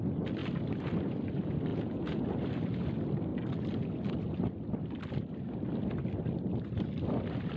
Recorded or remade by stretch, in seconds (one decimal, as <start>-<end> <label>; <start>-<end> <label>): 0.0-1.7 recorded; 1.7-2.2 remade; 2.2-7.6 recorded

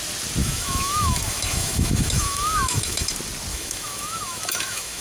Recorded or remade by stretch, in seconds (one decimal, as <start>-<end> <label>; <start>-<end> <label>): 0.0-0.4 recorded; 0.4-3.1 remade; 3.1-3.5 recorded; 3.5-5.0 remade

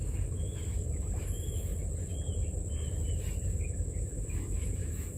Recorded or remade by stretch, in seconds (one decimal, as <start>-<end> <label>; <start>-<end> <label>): 0.0-1.7 remade; 1.7-3.6 recorded; 3.6-5.2 remade

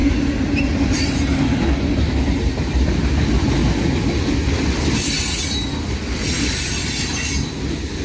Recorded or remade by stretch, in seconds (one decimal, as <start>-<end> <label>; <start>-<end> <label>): 0.0-8.0 recorded

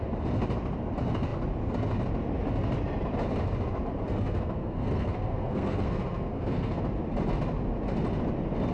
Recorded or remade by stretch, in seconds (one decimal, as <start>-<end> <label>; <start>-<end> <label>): 0.0-4.1 recorded; 4.1-6.8 remade; 6.8-8.7 recorded

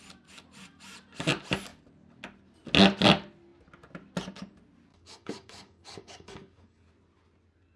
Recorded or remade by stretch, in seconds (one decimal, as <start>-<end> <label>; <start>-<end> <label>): 0.0-4.9 recorded; 4.9-6.9 remade; 6.9-7.8 recorded